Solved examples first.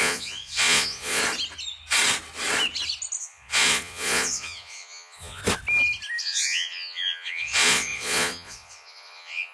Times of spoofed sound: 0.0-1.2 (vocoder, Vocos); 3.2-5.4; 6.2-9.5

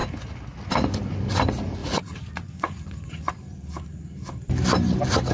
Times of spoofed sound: 1.8-3.3 (vocoder, Vocos)

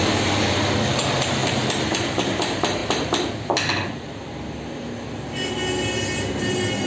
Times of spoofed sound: 0.0-2.8 (vocoder, BigVGAN v2)

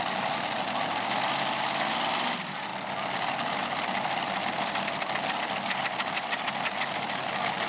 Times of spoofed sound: none